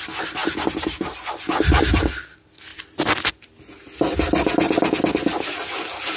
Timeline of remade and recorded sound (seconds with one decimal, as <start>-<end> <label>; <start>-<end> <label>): 0.0-0.4 recorded; 0.4-2.1 remade; 2.1-6.2 recorded